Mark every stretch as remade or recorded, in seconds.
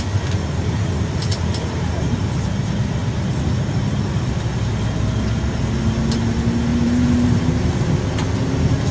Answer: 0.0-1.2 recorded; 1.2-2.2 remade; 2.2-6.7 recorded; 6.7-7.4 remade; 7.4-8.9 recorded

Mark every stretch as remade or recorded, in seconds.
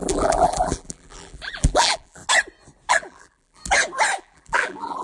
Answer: 0.0-2.2 remade; 2.2-2.9 recorded; 2.9-3.6 remade; 3.6-4.2 recorded; 4.2-5.0 remade